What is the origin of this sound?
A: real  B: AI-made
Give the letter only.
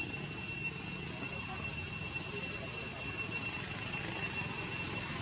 A